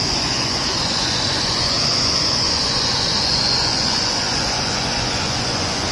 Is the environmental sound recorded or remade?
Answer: remade